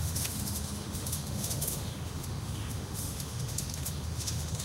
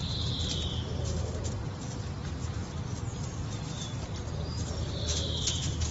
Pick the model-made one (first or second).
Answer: first